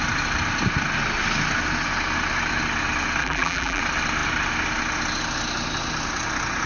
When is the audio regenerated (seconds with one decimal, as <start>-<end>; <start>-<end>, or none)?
3.2-3.8